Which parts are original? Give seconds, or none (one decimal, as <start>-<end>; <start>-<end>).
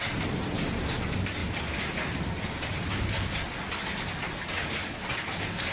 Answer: 0.0-5.7